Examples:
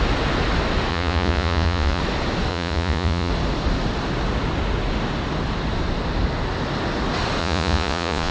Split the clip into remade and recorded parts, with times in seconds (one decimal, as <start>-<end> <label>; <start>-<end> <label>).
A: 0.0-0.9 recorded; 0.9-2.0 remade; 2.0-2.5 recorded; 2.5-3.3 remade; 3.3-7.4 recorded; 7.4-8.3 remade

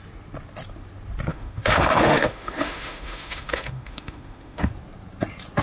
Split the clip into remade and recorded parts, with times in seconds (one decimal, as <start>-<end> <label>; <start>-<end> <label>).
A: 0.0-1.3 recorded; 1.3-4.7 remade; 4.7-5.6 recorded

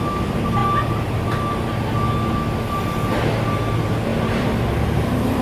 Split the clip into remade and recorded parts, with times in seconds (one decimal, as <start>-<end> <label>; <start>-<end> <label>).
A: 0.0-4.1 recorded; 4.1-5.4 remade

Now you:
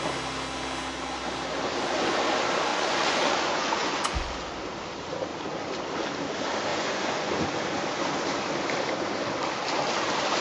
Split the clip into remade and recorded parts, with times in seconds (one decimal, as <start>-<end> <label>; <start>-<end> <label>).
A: 0.0-2.7 recorded; 2.7-4.3 remade; 4.3-6.7 recorded; 6.7-7.3 remade; 7.3-10.4 recorded

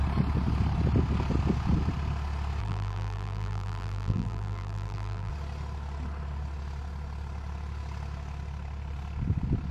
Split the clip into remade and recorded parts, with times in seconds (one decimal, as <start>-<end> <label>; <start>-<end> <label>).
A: 0.0-2.6 recorded; 2.6-5.3 remade; 5.3-9.7 recorded

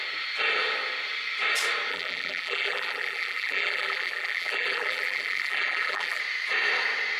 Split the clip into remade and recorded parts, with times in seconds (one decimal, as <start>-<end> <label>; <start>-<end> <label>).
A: 0.0-1.9 recorded; 1.9-6.2 remade; 6.2-7.2 recorded

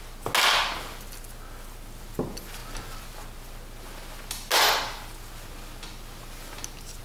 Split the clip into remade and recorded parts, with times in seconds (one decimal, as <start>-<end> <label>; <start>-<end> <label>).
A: 0.0-7.0 recorded

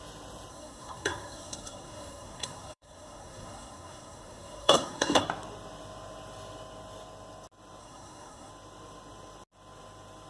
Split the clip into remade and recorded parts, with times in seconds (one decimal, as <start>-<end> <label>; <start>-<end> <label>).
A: 0.0-0.5 recorded; 0.5-5.2 remade; 5.2-7.8 recorded; 7.8-8.5 remade; 8.5-10.3 recorded